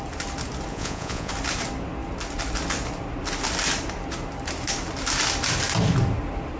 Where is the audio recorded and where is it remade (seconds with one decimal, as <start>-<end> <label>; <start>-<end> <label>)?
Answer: 0.0-0.7 recorded; 0.7-1.3 remade; 1.3-6.6 recorded